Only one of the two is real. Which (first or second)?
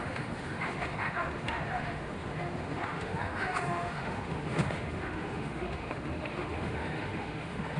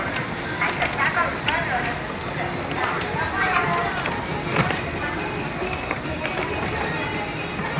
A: second